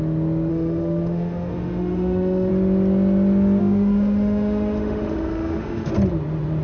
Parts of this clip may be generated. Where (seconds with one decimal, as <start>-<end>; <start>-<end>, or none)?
0.5-2.5; 3.6-5.9